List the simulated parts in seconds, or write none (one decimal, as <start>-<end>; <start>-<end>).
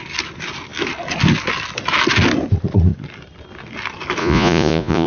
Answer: 4.2-5.1